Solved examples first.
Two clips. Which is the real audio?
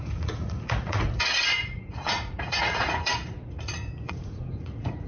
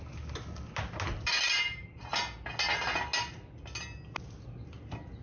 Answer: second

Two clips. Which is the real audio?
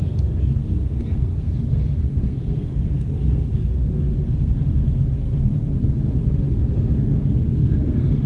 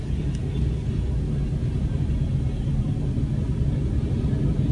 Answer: second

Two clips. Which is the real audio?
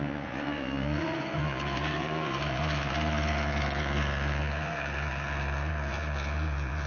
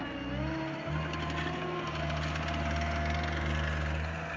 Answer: second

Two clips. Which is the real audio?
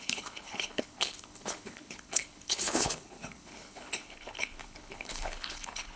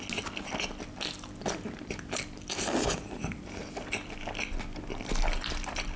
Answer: second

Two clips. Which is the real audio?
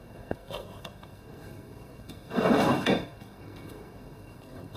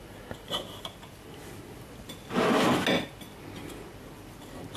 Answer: second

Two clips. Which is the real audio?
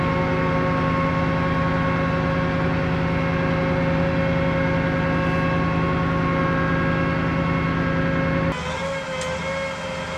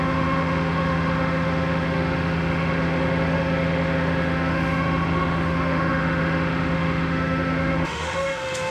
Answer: first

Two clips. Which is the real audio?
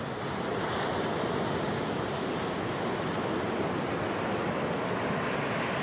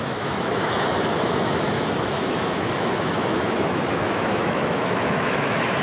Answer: first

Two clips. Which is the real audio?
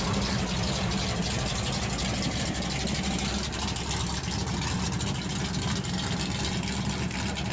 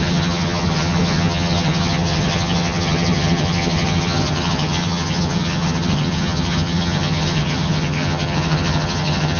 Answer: first